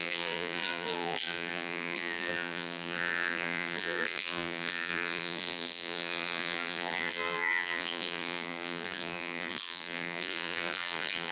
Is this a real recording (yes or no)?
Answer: no